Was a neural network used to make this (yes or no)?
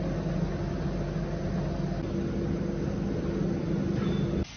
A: no